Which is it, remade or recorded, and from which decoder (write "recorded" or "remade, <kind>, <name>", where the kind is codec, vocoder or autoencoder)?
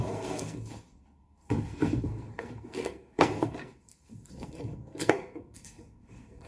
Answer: remade, codec, SNAC